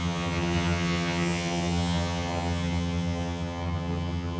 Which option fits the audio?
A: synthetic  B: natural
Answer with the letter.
A